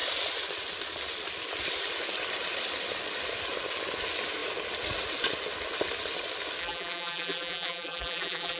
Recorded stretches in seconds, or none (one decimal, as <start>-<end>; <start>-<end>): 0.0-6.6